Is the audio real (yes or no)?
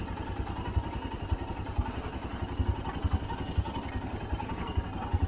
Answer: yes